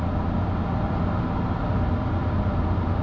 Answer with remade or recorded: recorded